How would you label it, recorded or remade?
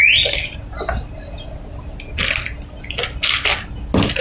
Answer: recorded